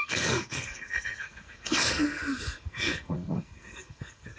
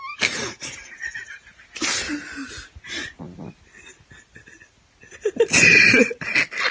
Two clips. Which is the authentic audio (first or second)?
second